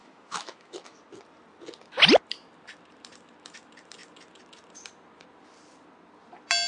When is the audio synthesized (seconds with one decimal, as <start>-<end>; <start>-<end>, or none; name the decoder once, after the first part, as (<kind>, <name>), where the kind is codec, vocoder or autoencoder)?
0.0-1.0 (autoencoder, DAC-VAE)